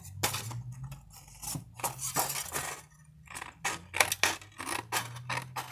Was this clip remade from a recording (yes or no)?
no